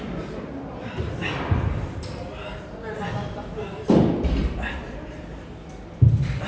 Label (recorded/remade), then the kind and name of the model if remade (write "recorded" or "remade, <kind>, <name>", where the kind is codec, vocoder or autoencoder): recorded